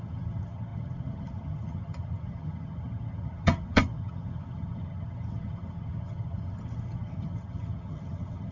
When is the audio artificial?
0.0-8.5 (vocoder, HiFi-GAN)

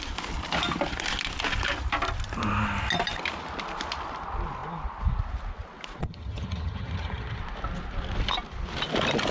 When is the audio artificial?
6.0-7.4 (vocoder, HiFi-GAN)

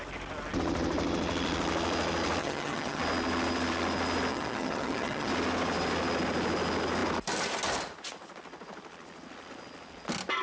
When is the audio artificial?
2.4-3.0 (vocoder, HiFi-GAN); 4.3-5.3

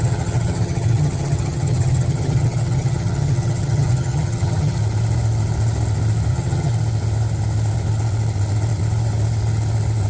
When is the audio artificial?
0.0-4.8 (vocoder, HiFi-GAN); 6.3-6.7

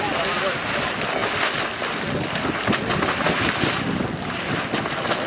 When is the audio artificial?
none

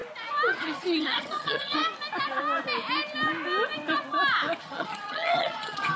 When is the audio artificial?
0.6-1.8 (vocoder, HiFi-GAN); 4.6-6.0

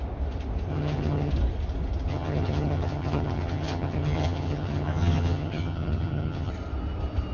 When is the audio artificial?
0.7-1.3 (vocoder, HiFi-GAN); 2.1-6.5

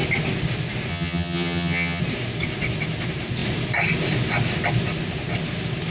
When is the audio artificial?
0.9-2.0 (vocoder, HiFi-GAN)